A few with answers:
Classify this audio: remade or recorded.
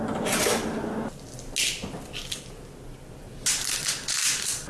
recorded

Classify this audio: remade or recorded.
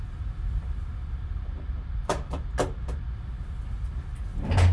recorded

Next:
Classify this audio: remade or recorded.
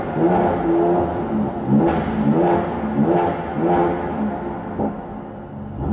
recorded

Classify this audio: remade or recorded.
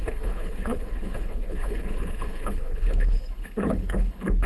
remade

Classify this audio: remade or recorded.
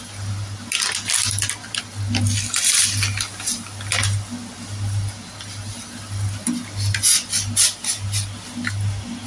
recorded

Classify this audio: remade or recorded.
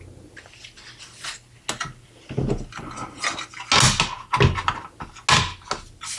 recorded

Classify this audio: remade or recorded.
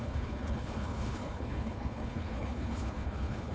remade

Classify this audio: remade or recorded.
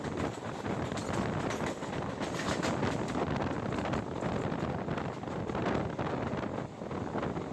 recorded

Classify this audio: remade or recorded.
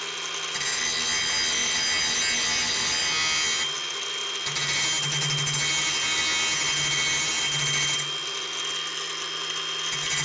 recorded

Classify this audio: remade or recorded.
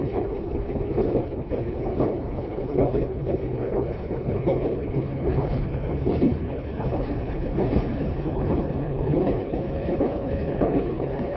remade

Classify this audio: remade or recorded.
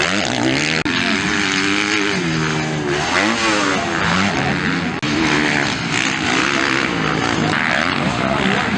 recorded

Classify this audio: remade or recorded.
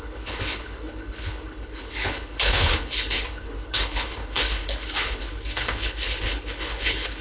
remade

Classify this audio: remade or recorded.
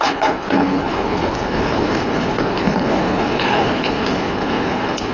remade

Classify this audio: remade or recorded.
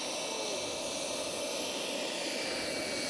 recorded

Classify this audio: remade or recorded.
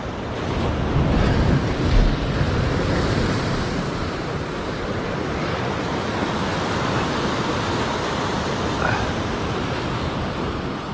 recorded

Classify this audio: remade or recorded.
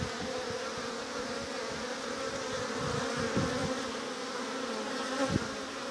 recorded